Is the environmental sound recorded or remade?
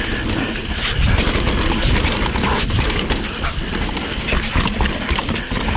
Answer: recorded